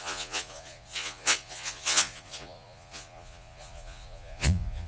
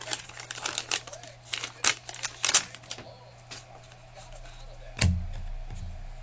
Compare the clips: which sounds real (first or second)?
second